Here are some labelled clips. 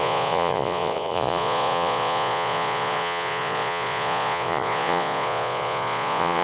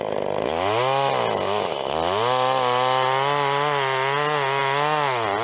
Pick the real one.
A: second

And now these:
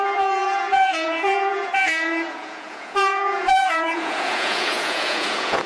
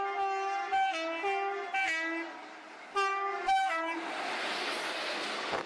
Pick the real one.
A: second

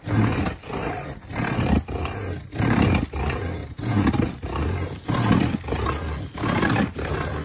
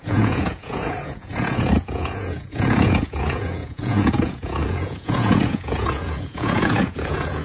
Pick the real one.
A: first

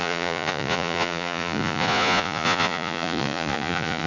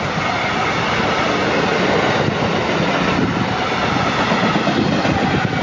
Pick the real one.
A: second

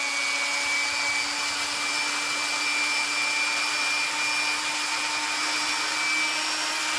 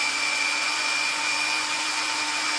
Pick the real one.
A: first